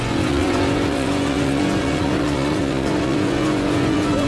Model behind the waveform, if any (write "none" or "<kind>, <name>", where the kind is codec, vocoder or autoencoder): vocoder, Vocos